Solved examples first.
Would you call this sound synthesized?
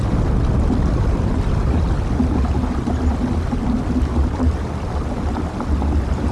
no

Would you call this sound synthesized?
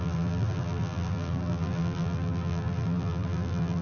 yes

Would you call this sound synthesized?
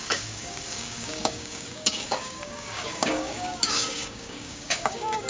yes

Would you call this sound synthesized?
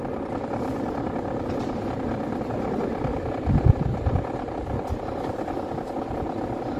yes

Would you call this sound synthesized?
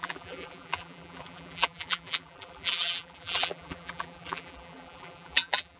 yes